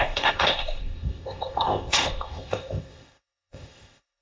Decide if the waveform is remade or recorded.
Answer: remade